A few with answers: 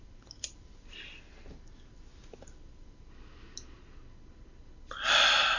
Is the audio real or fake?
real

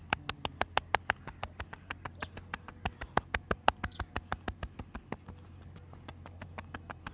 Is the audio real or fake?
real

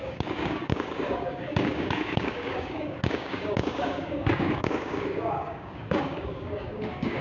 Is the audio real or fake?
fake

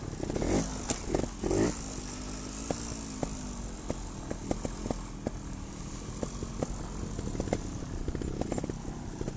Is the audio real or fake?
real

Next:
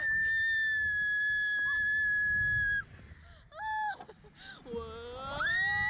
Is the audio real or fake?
real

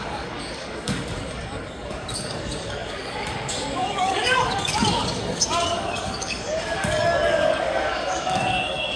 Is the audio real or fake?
fake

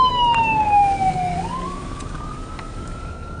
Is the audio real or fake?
fake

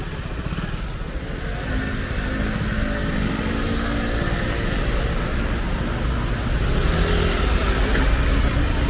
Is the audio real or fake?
real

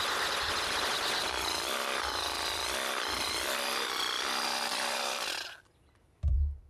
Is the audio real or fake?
real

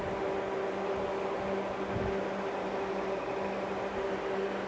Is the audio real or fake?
real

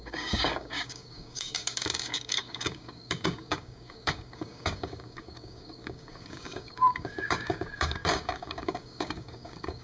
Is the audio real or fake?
fake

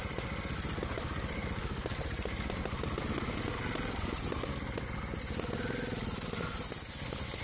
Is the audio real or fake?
real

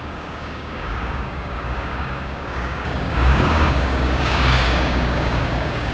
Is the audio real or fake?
fake